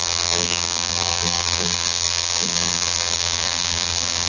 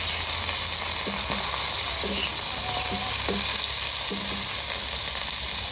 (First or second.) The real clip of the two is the second